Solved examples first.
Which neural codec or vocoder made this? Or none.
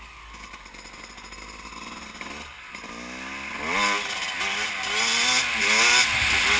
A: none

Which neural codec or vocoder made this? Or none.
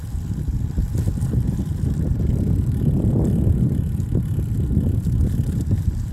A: vocoder, BigVGAN v2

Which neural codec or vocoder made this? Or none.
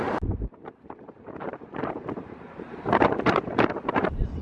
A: vocoder, BigVGAN v2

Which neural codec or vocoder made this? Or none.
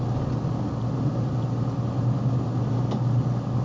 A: none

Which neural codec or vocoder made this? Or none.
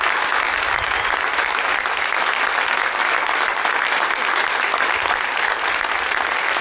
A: none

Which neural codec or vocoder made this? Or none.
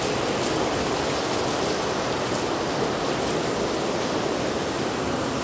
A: none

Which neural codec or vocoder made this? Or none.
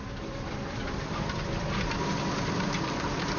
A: vocoder, BigVGAN v2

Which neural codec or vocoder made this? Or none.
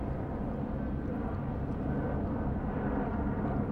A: none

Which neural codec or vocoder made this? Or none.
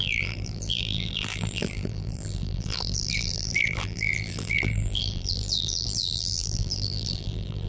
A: vocoder, BigVGAN v2